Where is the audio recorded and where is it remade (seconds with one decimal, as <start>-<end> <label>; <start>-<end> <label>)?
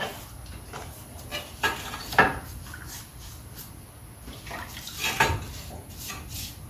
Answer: 0.0-1.3 recorded; 1.3-3.7 remade; 3.7-4.3 recorded; 4.3-4.8 remade; 4.8-6.7 recorded